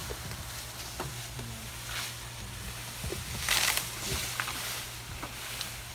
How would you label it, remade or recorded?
recorded